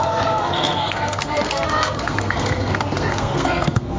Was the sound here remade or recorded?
remade